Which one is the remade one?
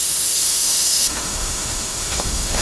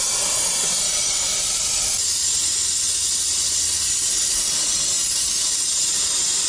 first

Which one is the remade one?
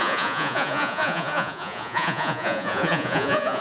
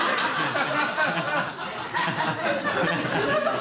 first